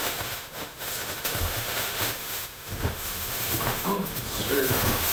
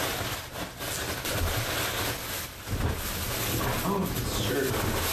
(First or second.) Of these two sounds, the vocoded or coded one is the first